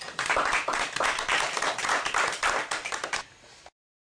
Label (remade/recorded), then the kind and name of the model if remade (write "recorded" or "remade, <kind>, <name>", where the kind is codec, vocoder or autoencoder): remade, vocoder, BigVGAN v2